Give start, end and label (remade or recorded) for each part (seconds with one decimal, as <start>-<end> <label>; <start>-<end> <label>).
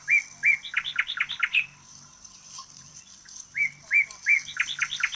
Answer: 0.0-0.7 recorded; 0.7-3.8 remade; 3.8-5.2 recorded